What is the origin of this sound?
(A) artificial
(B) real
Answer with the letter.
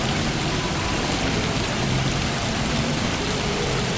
A